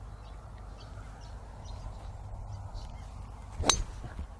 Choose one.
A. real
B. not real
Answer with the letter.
A